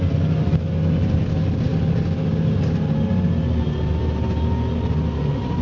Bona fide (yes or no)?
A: yes